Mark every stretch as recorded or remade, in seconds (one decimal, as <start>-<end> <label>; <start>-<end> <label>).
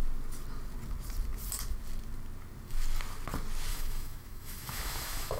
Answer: 0.0-3.7 recorded; 3.7-5.4 remade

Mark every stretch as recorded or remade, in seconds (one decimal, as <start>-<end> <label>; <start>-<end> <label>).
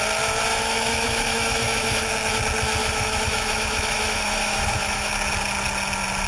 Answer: 0.0-0.5 recorded; 0.5-2.1 remade; 2.1-2.8 recorded; 2.8-5.1 remade; 5.1-6.3 recorded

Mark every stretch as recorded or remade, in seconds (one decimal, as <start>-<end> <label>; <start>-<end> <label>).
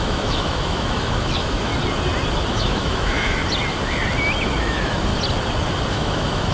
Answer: 0.0-1.7 remade; 1.7-2.5 recorded; 2.5-3.4 remade; 3.4-4.6 recorded; 4.6-5.1 remade; 5.1-5.9 recorded; 5.9-6.5 remade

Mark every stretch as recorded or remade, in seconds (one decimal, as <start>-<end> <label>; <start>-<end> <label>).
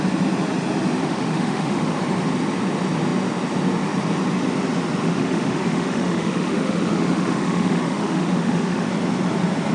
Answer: 0.0-1.0 recorded; 1.0-2.0 remade; 2.0-5.0 recorded; 5.0-8.9 remade; 8.9-9.7 recorded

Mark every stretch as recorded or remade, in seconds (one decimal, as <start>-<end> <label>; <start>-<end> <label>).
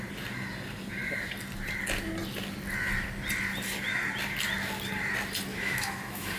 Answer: 0.0-5.5 recorded; 5.5-6.4 remade